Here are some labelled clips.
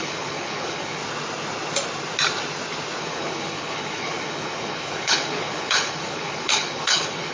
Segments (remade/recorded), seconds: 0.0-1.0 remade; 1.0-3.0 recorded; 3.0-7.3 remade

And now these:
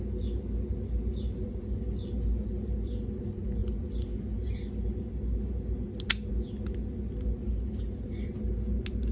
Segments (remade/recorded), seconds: 0.0-9.1 recorded

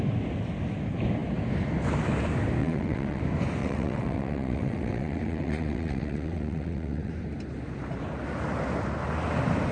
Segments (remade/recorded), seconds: 0.0-2.6 recorded; 2.6-3.2 remade; 3.2-3.6 recorded; 3.6-7.1 remade; 7.1-9.7 recorded

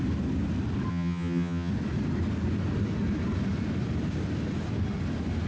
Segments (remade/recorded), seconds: 0.0-0.9 recorded; 0.9-1.7 remade; 1.7-5.5 recorded

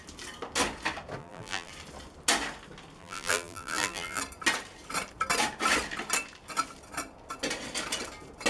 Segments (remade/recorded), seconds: 0.0-1.2 recorded; 1.2-1.7 remade; 1.7-3.0 recorded; 3.0-4.2 remade; 4.2-8.5 recorded